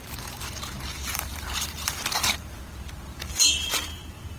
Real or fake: fake